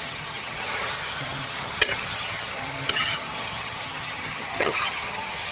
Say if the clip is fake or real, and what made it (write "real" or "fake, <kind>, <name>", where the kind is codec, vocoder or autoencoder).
fake, vocoder, HiFi-GAN